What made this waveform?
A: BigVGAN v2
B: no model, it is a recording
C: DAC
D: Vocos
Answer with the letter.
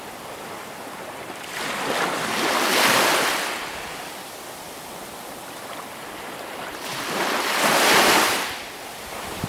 A